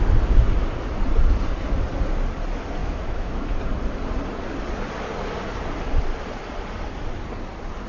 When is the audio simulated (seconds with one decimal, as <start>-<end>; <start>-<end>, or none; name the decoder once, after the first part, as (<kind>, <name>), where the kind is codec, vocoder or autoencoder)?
2.8-3.6 (autoencoder, DAC-VAE)